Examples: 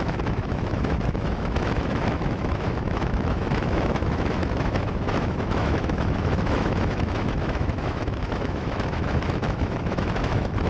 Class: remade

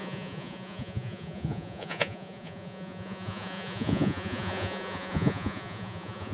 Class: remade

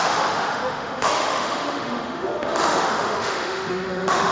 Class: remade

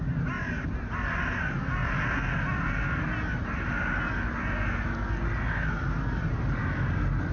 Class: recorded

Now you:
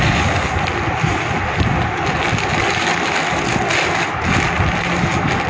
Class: recorded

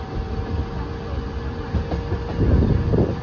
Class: recorded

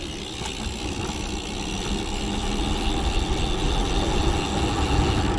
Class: recorded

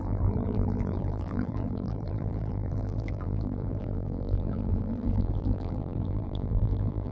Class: remade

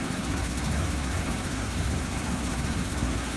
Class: remade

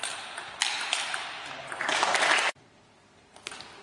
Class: remade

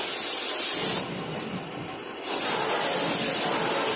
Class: recorded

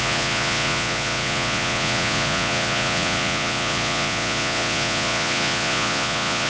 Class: remade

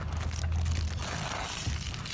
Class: recorded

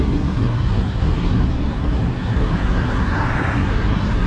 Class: remade